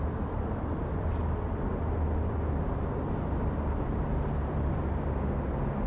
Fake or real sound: real